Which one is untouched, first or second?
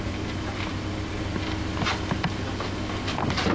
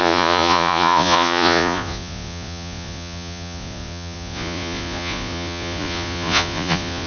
first